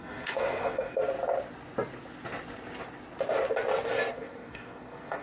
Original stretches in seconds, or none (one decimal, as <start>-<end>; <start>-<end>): 1.0-4.1